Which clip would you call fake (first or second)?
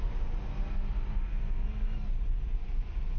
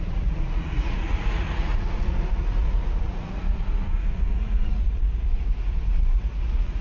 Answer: second